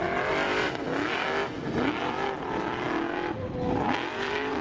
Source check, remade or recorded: recorded